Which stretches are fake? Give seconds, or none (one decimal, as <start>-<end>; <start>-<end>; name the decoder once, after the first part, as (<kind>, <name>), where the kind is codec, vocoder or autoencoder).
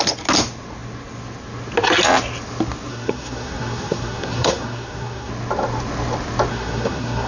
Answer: 2.9-5.3 (codec, SNAC); 6.5-7.3